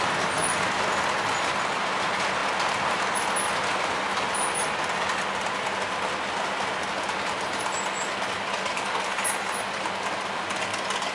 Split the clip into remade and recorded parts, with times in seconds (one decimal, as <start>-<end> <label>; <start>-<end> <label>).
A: 0.0-11.1 recorded